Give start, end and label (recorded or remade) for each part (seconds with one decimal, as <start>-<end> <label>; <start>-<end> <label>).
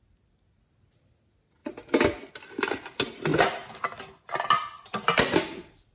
0.0-5.9 recorded